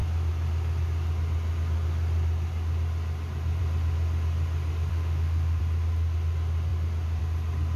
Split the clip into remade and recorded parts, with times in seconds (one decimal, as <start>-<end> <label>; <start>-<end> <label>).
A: 0.0-4.9 recorded; 4.9-5.6 remade; 5.6-7.8 recorded